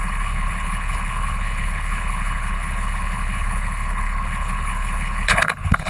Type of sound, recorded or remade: remade